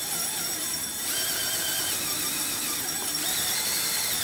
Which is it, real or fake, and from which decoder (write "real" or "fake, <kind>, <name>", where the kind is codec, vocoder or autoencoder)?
real